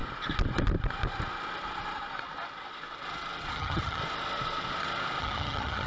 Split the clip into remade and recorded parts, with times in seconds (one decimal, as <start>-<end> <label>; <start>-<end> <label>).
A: 0.0-3.5 recorded; 3.5-4.0 remade; 4.0-5.2 recorded; 5.2-5.9 remade